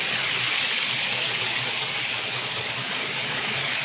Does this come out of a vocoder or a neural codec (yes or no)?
yes